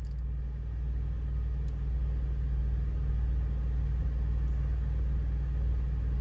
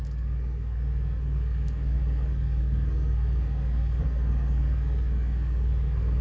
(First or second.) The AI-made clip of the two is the second